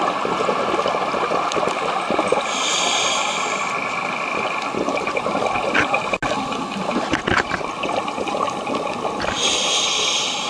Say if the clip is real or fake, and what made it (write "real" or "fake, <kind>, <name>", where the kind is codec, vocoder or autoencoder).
real